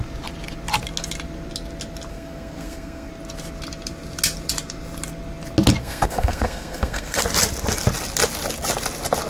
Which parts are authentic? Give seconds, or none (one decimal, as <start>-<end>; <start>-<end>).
0.0-2.1; 3.1-5.8; 7.2-9.3